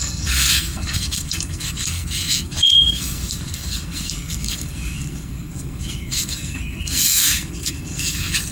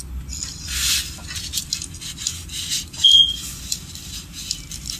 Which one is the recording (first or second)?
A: second